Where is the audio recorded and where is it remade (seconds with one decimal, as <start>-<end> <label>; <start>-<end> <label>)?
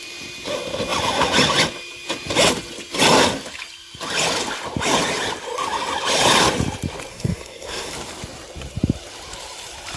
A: 0.0-7.1 recorded; 7.1-7.9 remade; 7.9-10.0 recorded